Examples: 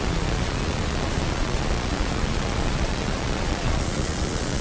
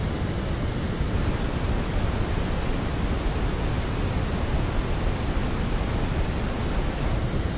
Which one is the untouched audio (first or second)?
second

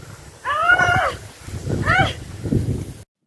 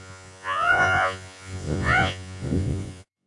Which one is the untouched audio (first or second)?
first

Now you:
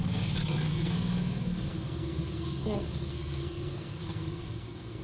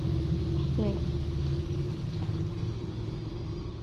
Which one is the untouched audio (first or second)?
second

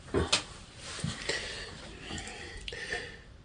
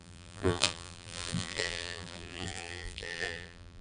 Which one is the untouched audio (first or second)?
first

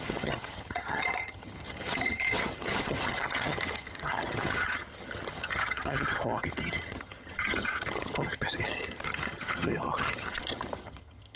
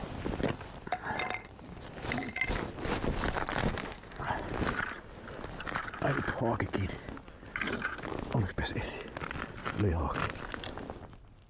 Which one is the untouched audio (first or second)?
second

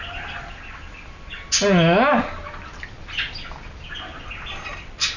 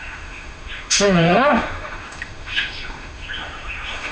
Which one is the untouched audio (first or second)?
first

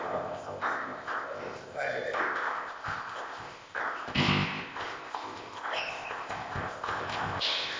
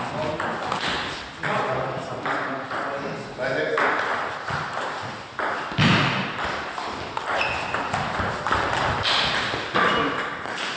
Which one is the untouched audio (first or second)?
second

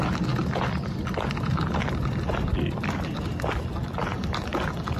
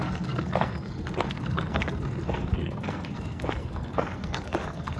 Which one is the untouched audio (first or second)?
first